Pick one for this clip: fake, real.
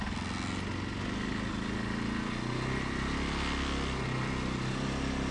real